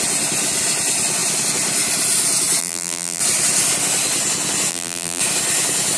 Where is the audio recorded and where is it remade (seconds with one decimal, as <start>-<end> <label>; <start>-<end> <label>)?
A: 0.0-2.6 recorded; 2.6-3.2 remade; 3.2-4.7 recorded; 4.7-5.2 remade; 5.2-6.0 recorded